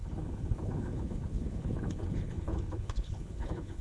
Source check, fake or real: fake